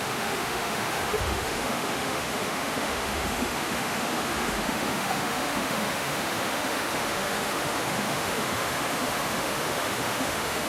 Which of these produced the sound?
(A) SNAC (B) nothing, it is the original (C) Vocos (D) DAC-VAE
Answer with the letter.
D